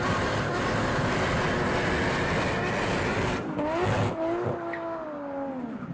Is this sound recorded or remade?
recorded